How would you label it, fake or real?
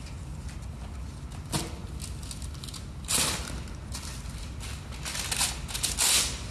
real